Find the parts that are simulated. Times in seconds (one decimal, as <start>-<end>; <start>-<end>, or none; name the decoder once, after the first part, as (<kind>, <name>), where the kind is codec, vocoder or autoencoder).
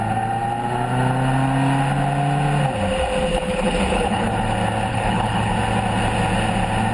3.3-4.3 (codec, HILCodec); 4.9-5.5